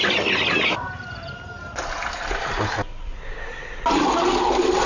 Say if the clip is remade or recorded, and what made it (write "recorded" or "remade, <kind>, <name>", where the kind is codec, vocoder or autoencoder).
recorded